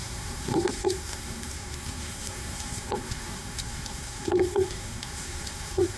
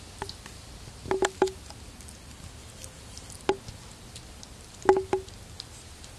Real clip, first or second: second